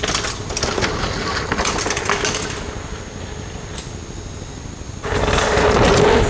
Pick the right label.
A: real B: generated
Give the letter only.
A